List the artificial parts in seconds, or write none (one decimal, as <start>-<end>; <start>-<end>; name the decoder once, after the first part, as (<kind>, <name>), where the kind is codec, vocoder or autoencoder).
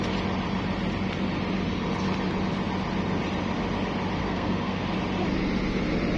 4.2-4.8 (codec, SNAC)